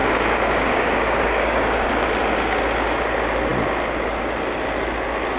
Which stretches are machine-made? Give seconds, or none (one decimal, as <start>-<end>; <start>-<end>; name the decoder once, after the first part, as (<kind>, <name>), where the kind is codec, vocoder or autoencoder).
0.0-1.9 (codec, DAC)